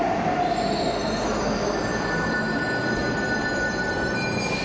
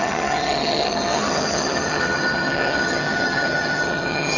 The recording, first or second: first